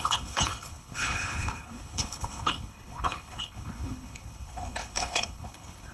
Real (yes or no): no